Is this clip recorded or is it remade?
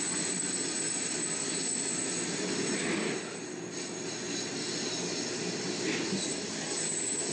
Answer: recorded